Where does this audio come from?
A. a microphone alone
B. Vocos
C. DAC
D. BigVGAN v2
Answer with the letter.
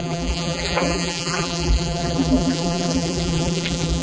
D